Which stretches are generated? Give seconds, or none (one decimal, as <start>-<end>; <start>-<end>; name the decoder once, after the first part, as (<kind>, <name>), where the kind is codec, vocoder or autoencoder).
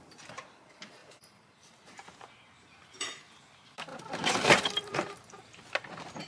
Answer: 1.0-3.2 (vocoder, BigVGAN v2); 3.9-5.6